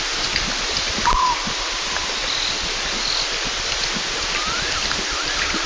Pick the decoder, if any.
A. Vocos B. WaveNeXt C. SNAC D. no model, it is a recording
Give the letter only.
D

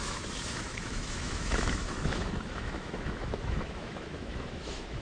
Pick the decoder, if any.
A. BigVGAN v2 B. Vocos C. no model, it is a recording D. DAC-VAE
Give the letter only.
D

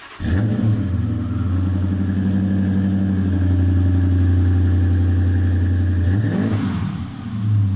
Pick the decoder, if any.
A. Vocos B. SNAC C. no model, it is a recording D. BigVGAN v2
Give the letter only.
C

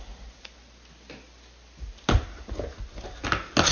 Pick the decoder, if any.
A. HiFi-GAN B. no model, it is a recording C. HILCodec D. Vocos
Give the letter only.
B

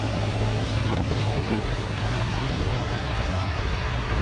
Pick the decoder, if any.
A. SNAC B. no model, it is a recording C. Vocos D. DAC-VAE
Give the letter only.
A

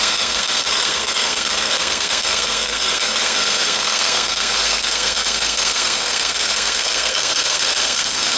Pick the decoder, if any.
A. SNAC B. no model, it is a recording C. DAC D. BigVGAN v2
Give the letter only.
A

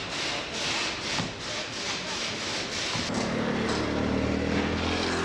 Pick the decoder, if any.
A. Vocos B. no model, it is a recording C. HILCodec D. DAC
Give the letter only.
B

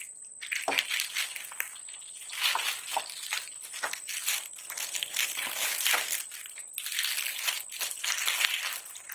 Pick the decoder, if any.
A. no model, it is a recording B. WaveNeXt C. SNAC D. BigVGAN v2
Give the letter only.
A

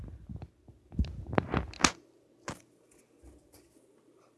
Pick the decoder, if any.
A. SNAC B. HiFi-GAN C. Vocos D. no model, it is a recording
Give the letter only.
D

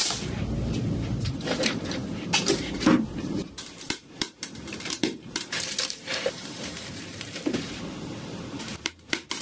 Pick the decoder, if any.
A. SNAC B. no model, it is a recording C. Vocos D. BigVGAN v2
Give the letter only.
D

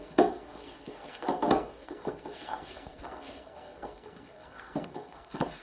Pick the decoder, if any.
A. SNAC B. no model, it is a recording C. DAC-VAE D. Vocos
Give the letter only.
A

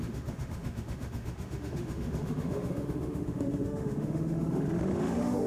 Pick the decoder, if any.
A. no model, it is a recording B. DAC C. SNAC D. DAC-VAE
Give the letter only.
D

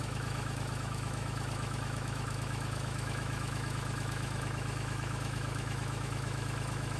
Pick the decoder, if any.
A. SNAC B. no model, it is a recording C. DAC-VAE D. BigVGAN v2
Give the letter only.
C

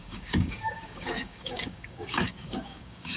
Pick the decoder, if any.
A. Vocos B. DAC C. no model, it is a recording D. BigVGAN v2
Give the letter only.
B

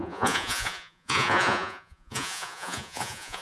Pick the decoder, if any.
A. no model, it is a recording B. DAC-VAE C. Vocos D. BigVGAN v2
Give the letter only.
C